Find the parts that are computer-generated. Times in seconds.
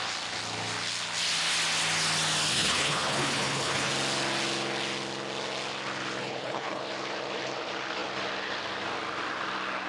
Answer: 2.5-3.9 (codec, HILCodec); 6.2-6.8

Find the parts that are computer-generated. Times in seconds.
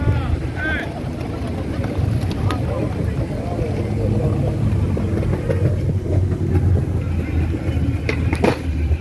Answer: 5.9-6.4 (codec, HILCodec)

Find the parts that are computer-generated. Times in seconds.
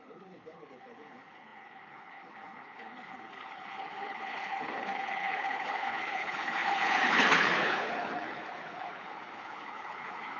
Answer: 0.0-10.4 (codec, HILCodec)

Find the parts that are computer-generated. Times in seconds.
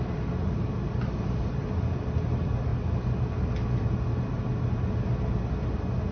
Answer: none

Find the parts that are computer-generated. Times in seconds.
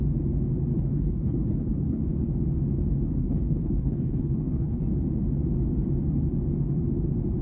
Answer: 0.7-2.0 (codec, HILCodec); 3.2-4.8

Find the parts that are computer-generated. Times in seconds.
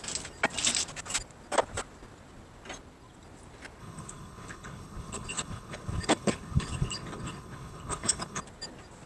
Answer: 3.8-8.4 (codec, HILCodec)